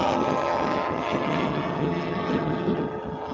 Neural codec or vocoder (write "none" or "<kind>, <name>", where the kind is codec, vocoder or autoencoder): vocoder, HiFi-GAN